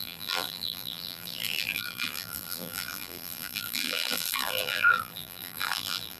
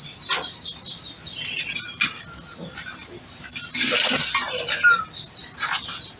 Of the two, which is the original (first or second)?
second